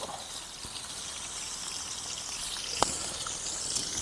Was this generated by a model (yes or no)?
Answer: no